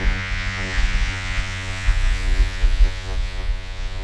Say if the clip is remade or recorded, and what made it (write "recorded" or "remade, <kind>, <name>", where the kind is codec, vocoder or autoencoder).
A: remade, vocoder, Vocos